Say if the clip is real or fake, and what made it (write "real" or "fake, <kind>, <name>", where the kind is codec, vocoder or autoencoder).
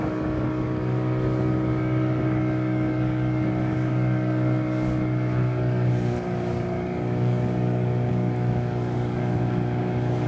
fake, codec, DAC